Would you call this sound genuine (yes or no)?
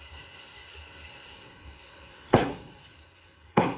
no